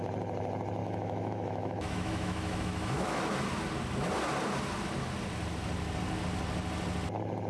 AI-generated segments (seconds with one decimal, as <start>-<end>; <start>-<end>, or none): 0.8-3.2